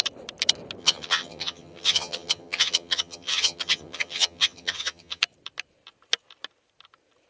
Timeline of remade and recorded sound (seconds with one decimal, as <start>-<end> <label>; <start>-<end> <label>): 0.0-0.8 recorded; 0.8-5.2 remade; 5.2-7.3 recorded